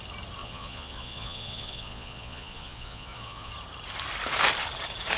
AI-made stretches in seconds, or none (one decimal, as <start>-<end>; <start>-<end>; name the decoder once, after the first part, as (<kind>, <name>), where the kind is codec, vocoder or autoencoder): 0.4-3.5 (vocoder, Vocos)